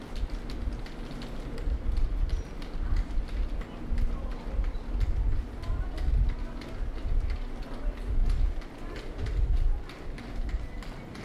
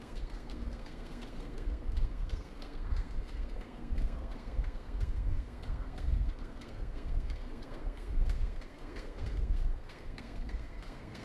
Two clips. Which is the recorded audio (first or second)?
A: first